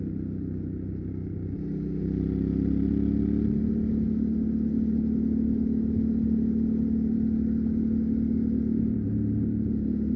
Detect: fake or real real